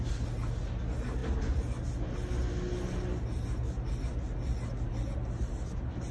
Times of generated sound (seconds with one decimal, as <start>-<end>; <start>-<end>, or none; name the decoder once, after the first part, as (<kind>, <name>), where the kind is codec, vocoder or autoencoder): none